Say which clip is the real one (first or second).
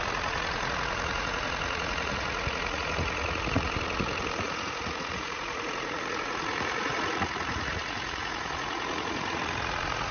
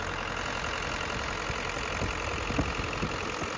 second